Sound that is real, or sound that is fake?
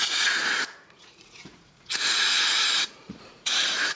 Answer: fake